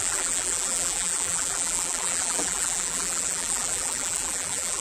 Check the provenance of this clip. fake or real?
fake